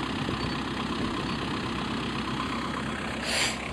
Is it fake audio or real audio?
real